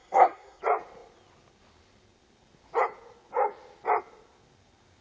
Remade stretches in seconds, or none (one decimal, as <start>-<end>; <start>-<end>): 0.0-0.6